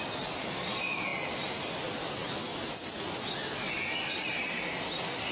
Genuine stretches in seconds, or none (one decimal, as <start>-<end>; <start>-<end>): 0.0-5.3